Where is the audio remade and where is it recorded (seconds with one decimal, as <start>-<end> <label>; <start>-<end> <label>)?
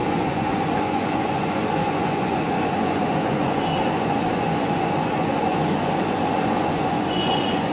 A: 0.0-7.7 remade